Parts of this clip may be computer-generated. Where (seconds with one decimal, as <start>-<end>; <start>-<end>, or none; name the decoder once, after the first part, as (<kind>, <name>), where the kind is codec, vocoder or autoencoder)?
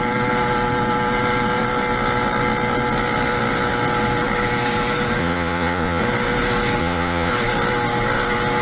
5.2-6.0 (vocoder, Vocos); 6.8-7.3